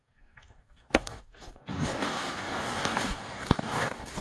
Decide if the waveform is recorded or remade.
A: remade